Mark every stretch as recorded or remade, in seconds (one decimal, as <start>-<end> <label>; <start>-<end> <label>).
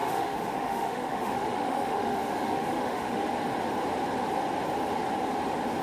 0.0-3.2 remade; 3.2-5.8 recorded